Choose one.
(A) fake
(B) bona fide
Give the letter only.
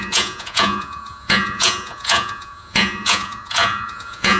A